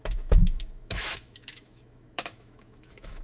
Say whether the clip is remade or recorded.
remade